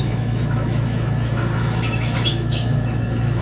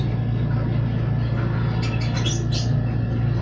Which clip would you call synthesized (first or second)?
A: first